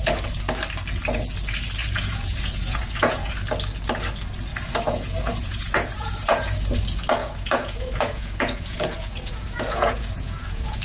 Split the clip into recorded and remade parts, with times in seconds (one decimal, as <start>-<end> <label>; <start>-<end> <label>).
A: 0.0-1.8 recorded; 1.8-3.3 remade; 3.3-4.5 recorded; 4.5-6.8 remade; 6.8-7.2 recorded; 7.2-10.8 remade